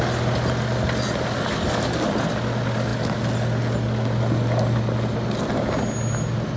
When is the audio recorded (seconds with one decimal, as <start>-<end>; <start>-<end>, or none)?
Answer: 0.0-6.6